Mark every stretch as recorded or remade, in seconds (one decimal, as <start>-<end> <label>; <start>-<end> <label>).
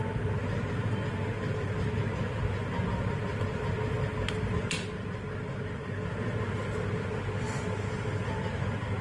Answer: 0.0-9.0 recorded